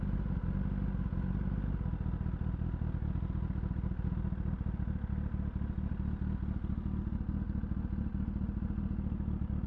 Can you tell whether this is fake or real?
real